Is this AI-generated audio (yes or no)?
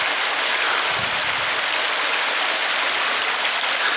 no